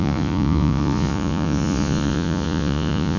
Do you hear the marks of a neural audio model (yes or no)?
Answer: yes